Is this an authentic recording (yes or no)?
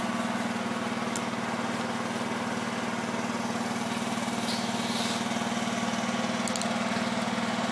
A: yes